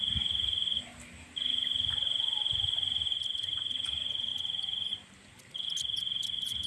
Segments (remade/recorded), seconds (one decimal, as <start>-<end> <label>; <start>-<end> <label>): 0.0-6.7 recorded